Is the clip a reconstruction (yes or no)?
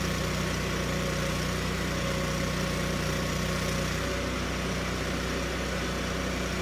no